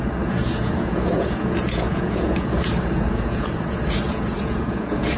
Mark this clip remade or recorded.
remade